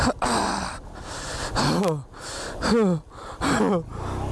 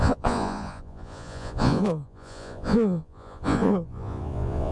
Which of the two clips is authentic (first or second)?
first